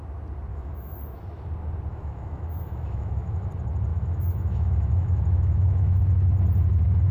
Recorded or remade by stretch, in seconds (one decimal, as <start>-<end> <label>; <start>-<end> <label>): 0.0-0.5 recorded; 0.5-1.0 remade; 1.0-1.9 recorded; 1.9-3.5 remade; 3.5-3.9 recorded; 3.9-6.0 remade; 6.0-7.1 recorded